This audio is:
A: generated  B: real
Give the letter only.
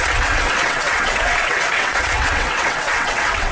A